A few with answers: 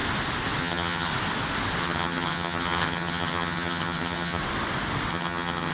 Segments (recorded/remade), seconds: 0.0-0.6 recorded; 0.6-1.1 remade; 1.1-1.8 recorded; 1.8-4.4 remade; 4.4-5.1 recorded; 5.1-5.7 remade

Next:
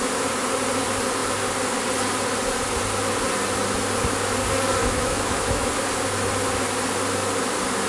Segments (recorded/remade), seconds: 0.0-4.8 recorded; 4.8-5.7 remade; 5.7-7.9 recorded

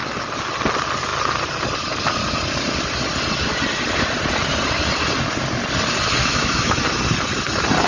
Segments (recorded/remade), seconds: 0.0-6.2 recorded; 6.2-6.8 remade; 6.8-7.9 recorded

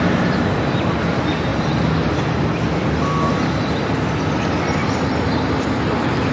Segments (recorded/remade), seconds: 0.0-6.3 recorded

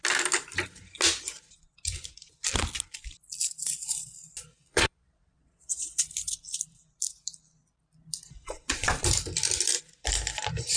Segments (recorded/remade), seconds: 0.0-4.5 recorded; 4.5-6.0 remade; 6.0-10.8 recorded

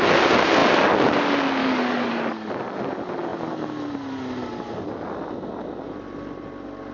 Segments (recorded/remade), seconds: 0.0-1.6 recorded; 1.6-2.5 remade; 2.5-6.9 recorded

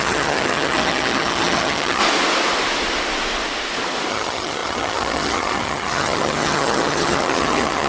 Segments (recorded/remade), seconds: 0.0-2.0 remade; 2.0-4.1 recorded; 4.1-7.9 remade